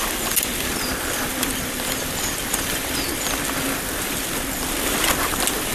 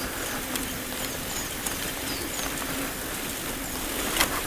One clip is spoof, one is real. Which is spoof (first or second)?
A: first